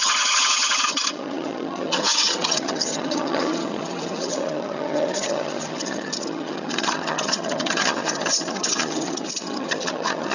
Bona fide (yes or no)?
no